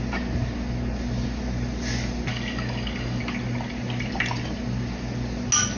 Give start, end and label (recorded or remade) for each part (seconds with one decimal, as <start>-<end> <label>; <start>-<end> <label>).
0.0-2.3 recorded; 2.3-3.2 remade; 3.2-5.8 recorded